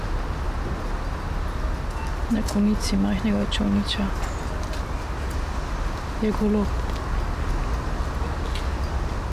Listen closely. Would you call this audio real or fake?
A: real